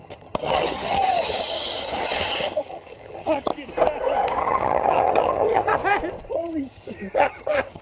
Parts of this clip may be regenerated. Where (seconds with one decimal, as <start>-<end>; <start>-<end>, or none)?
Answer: 0.0-3.5; 4.4-5.8; 6.3-7.8